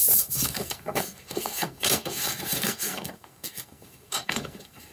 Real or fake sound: fake